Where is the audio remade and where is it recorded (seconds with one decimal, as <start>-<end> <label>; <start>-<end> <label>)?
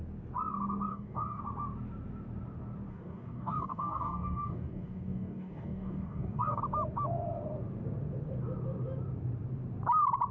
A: 0.0-0.9 recorded; 0.9-1.4 remade; 1.4-2.9 recorded; 2.9-6.6 remade; 6.6-10.3 recorded